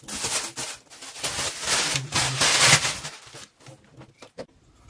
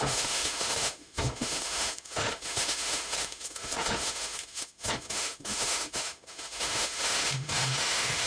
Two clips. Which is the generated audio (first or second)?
second